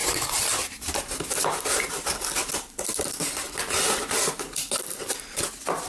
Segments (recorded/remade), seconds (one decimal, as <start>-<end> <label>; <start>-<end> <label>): 0.0-5.9 recorded